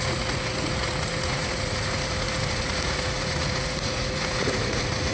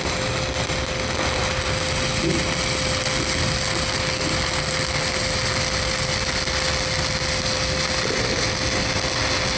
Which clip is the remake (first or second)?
first